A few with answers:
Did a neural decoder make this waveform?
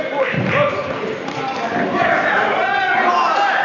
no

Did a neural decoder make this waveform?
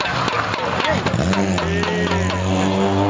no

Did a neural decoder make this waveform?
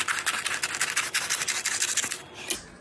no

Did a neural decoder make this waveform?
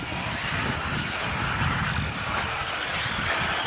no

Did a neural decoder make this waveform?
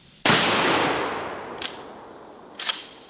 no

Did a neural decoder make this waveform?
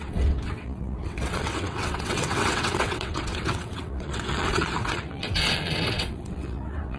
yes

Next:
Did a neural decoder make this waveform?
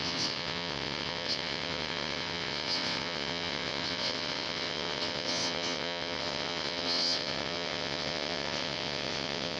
yes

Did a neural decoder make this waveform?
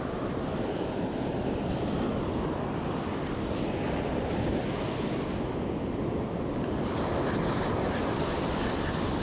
no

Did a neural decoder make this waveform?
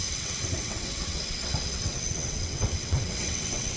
yes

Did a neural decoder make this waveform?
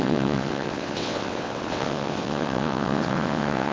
yes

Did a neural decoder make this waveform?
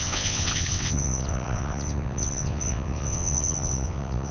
yes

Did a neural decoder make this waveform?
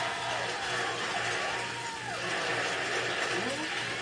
no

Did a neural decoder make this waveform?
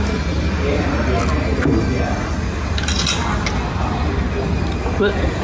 no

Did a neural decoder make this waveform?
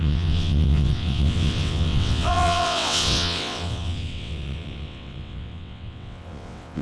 yes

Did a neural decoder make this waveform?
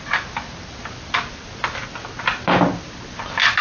no